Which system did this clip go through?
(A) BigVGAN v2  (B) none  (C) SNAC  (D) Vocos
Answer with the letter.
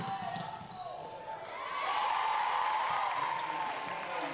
B